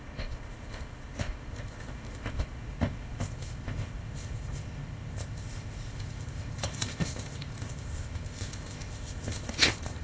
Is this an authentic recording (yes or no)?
no